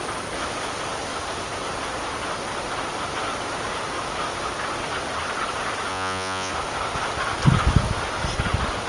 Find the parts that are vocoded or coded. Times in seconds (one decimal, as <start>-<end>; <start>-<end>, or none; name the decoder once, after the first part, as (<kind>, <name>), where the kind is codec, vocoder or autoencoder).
5.9-6.5 (vocoder, Vocos)